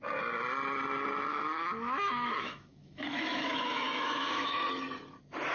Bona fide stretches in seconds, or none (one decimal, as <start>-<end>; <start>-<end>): 0.0-1.3; 4.6-5.5